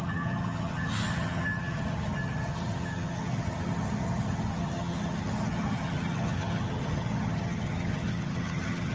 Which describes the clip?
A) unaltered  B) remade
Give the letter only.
B